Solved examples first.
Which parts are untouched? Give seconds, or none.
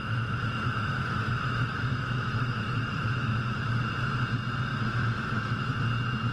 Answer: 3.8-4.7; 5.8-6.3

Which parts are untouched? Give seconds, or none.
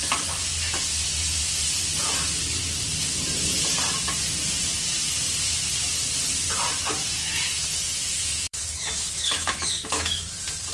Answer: 0.0-7.2; 10.2-10.7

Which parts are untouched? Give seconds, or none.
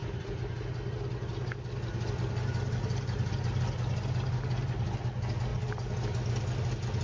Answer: 0.0-7.0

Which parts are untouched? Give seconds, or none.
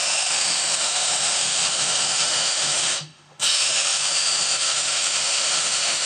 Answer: none